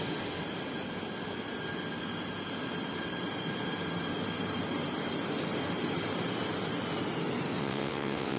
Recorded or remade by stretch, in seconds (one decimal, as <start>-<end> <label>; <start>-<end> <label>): 0.0-7.6 recorded; 7.6-8.4 remade